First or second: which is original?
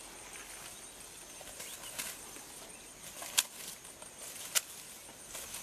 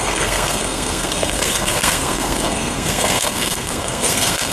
first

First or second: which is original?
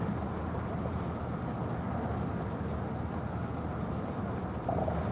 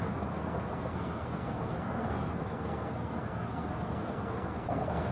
first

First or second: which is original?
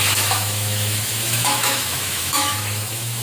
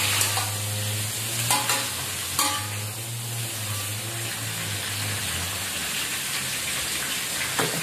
second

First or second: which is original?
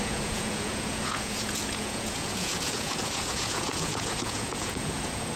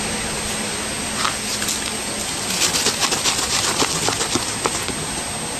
second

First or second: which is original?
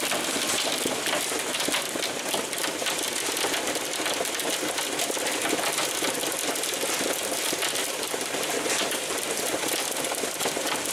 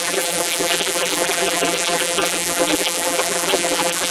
first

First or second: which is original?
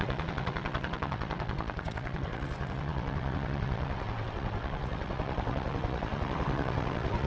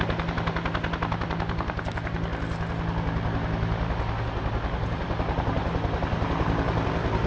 second